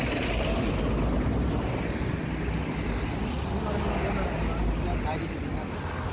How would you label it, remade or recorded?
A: recorded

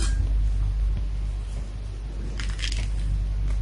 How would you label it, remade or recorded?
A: recorded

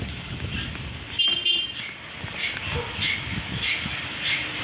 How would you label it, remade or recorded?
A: recorded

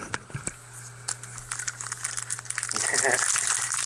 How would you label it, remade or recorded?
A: recorded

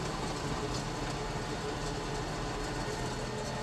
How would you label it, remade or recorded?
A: recorded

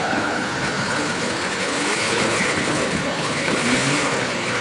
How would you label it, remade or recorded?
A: remade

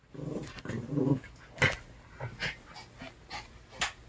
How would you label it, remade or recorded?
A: recorded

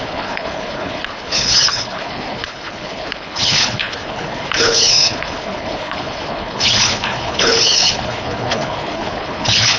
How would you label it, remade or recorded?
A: remade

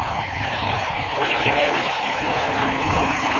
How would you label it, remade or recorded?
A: remade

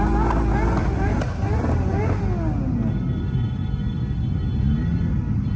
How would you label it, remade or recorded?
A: recorded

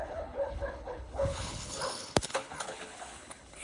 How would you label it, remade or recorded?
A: remade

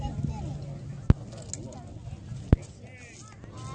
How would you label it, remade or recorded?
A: recorded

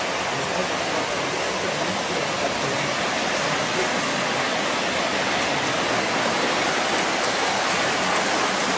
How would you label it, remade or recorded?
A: recorded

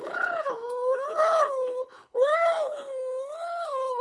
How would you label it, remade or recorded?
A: remade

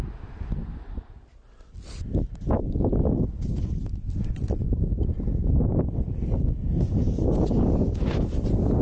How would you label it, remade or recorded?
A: recorded